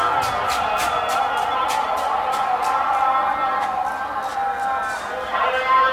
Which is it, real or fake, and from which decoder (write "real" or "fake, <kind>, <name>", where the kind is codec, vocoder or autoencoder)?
real